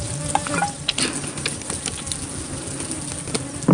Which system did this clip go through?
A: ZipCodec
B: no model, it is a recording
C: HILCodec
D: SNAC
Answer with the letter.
B